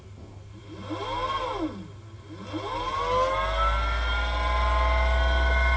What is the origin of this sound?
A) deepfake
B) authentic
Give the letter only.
B